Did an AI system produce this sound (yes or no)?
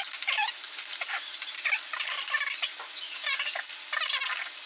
no